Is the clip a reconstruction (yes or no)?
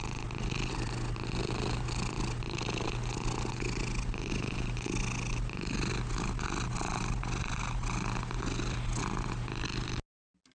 no